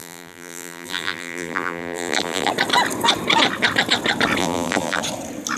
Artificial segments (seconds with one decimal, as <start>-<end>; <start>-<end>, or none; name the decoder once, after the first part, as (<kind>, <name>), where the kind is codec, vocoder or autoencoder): 0.0-2.5 (vocoder, BigVGAN v2); 4.4-5.0